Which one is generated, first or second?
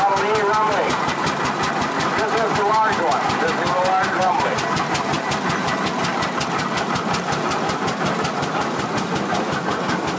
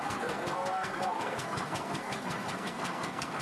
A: second